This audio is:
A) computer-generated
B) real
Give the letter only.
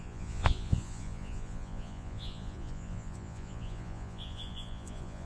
A